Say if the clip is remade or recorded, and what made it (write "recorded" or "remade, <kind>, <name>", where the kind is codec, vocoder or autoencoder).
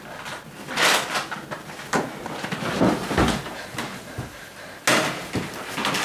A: recorded